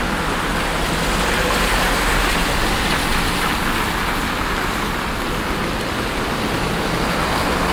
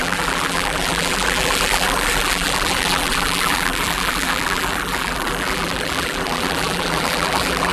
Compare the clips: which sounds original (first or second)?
first